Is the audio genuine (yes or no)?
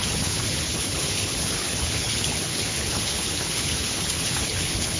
no